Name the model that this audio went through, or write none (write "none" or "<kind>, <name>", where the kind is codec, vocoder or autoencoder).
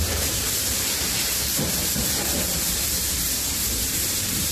vocoder, BigVGAN v2